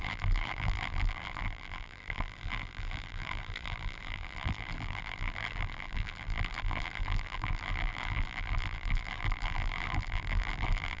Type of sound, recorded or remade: remade